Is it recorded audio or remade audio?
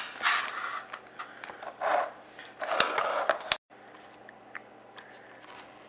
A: recorded